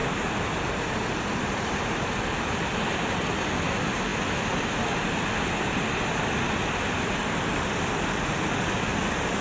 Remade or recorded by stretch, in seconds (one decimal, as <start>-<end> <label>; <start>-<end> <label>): 0.0-9.4 recorded